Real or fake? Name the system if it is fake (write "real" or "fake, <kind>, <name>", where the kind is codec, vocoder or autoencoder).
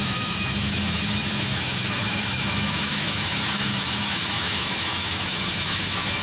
fake, autoencoder, DAC-VAE